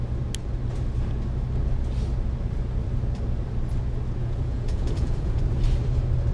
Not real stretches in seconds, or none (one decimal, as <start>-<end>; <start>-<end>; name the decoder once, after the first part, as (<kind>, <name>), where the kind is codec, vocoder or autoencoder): 4.2-5.4 (vocoder, Vocos)